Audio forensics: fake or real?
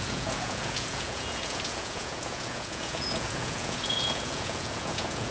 fake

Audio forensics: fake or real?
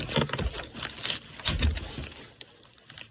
real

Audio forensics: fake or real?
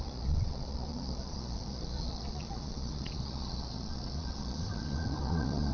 fake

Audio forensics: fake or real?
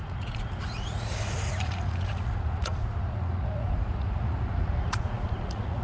fake